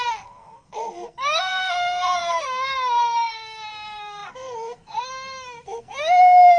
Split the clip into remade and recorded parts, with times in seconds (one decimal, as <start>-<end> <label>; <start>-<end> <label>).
0.0-6.6 remade